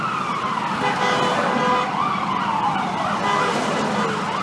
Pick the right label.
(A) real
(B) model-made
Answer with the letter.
A